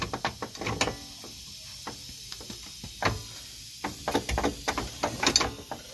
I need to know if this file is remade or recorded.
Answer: recorded